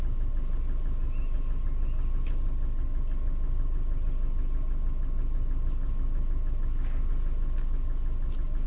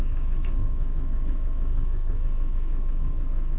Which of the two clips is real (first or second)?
first